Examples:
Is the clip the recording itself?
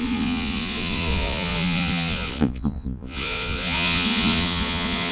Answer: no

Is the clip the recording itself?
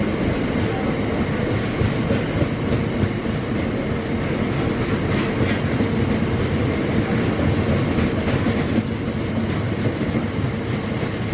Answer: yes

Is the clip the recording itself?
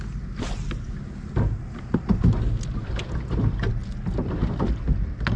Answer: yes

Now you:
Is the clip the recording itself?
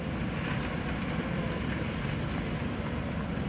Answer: yes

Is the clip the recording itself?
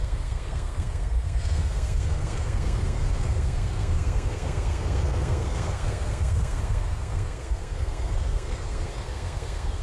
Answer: no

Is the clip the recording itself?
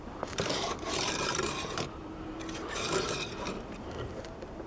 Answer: no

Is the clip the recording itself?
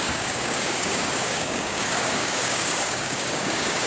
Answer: no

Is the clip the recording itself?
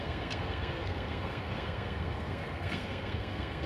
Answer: no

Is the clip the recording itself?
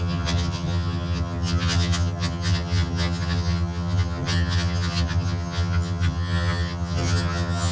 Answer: no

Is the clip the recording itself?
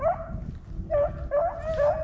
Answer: yes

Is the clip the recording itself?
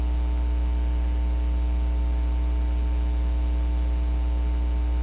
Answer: yes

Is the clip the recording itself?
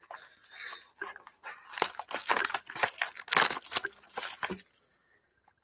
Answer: yes